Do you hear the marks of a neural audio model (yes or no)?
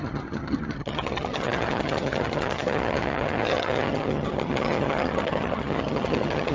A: yes